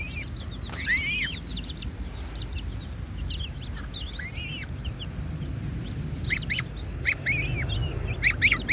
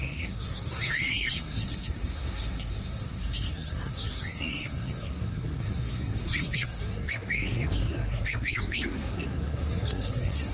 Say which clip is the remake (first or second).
second